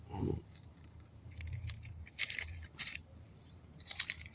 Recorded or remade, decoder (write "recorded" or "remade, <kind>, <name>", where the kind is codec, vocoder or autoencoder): remade, vocoder, BigVGAN v2